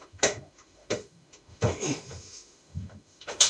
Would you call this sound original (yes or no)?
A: no